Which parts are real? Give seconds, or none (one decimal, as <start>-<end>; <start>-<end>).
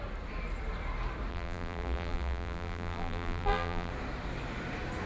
0.0-1.3; 3.9-5.1